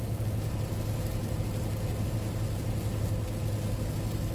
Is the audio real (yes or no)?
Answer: yes